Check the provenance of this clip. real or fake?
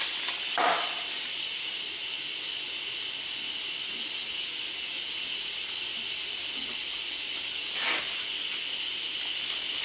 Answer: real